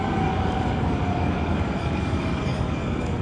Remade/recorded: remade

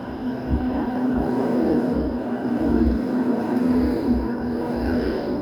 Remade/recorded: remade